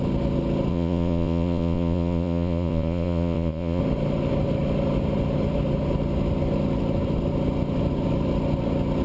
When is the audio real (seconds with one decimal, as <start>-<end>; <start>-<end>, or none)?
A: 0.0-0.7; 3.8-9.0

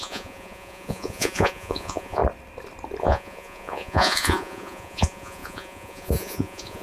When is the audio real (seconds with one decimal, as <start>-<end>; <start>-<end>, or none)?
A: 2.2-3.0